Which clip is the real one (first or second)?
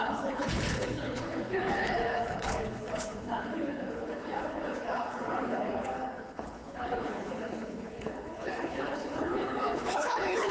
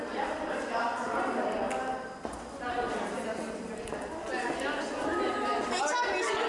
second